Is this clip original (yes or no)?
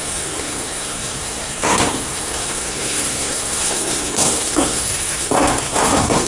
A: no